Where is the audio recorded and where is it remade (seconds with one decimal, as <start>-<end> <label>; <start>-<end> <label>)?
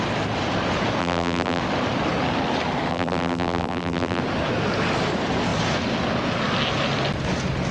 0.0-1.0 recorded; 1.0-1.6 remade; 1.6-2.9 recorded; 2.9-4.2 remade; 4.2-7.7 recorded